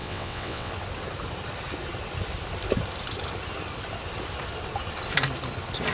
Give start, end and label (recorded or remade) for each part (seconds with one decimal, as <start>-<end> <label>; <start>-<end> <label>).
0.0-0.7 remade; 0.7-5.9 recorded

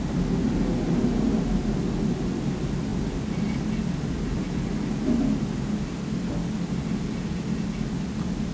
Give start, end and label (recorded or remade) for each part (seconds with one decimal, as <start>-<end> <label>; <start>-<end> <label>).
0.0-8.5 recorded

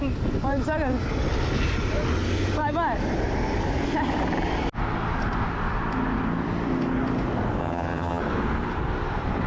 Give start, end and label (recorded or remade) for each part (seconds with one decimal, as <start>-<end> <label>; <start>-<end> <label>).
0.0-7.6 recorded; 7.6-8.2 remade; 8.2-9.5 recorded

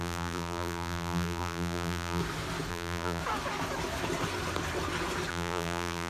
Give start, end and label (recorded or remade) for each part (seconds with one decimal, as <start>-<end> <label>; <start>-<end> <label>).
0.0-2.2 remade; 2.2-2.7 recorded; 2.7-3.2 remade; 3.2-5.3 recorded; 5.3-6.1 remade

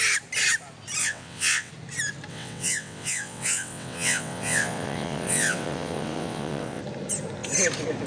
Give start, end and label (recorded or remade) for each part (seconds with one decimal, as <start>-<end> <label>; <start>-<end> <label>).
0.0-1.0 recorded; 1.0-1.7 remade; 1.7-2.3 recorded; 2.3-6.8 remade; 6.8-8.1 recorded

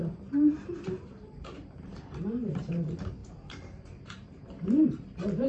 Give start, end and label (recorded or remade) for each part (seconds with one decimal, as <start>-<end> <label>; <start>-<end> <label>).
0.0-5.5 remade

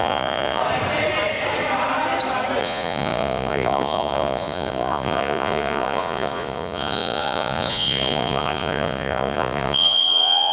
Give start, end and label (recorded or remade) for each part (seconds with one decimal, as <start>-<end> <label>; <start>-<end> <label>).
0.0-0.6 remade; 0.6-2.6 recorded; 2.6-10.5 remade